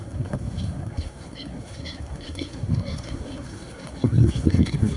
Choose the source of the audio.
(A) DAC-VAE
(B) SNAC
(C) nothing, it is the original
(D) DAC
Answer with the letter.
B